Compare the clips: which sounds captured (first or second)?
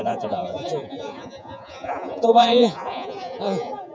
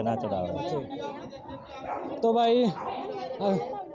second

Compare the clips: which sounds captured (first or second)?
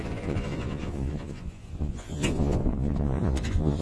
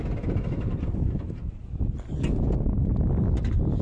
second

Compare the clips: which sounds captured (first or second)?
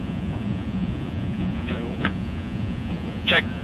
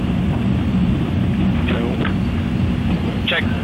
second